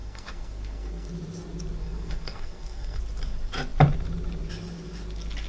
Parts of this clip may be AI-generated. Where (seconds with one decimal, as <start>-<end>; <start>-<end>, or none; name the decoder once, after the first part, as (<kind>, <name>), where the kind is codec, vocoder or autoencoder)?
0.0-1.1 (codec, SNAC); 1.8-3.0